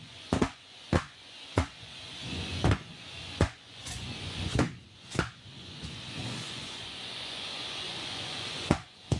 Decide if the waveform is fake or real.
fake